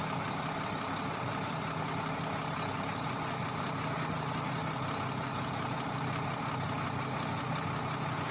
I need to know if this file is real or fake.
real